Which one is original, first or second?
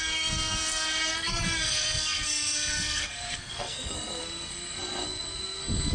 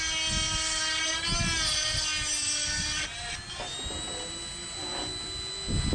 second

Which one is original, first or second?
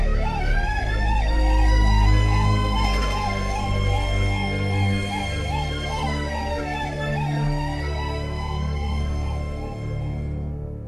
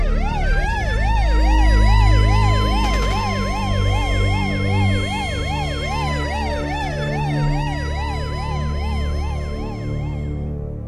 second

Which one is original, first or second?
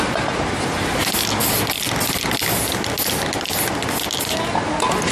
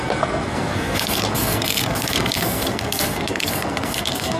first